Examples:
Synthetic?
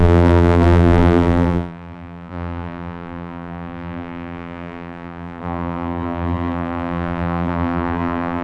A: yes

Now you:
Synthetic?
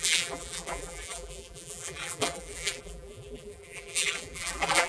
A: yes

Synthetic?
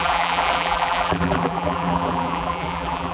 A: yes